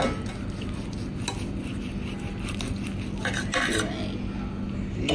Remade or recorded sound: recorded